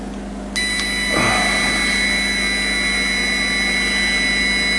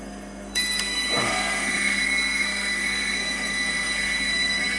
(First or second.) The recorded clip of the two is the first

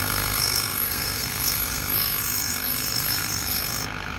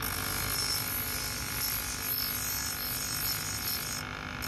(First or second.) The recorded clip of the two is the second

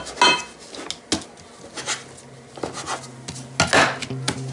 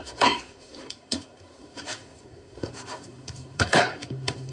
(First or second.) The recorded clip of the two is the first